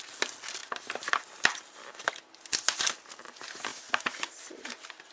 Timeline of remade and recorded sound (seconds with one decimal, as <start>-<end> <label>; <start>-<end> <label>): 0.0-0.6 recorded; 0.6-2.1 remade; 2.1-3.7 recorded; 3.7-5.1 remade